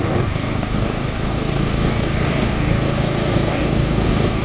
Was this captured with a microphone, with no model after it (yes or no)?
no